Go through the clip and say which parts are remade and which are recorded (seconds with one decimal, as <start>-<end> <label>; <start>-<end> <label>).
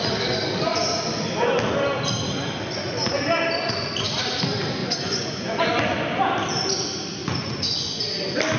0.0-4.8 recorded; 4.8-5.7 remade; 5.7-7.2 recorded; 7.2-8.0 remade; 8.0-8.6 recorded